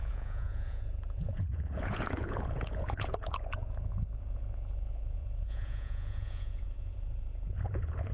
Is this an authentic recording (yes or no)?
no